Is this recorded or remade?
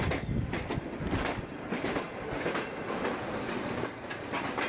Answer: remade